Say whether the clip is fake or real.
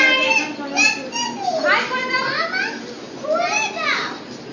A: real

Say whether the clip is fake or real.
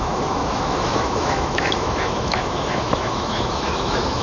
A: fake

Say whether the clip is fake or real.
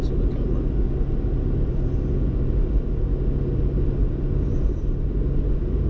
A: real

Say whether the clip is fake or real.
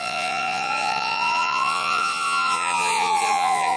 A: fake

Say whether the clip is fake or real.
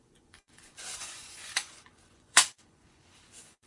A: fake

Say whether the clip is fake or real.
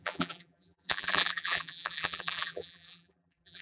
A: fake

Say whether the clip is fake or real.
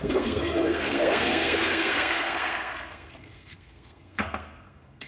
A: fake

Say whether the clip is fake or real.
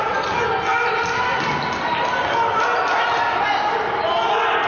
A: real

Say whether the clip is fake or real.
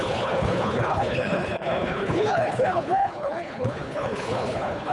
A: fake